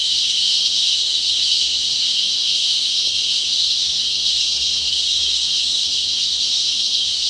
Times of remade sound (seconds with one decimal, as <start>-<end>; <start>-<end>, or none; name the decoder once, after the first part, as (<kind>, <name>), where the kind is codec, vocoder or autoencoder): 0.0-7.3 (codec, SNAC)